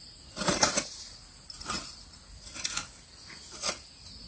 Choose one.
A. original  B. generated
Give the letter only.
A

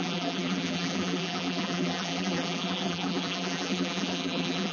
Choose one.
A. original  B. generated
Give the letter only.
B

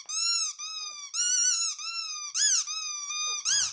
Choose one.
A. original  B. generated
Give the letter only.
A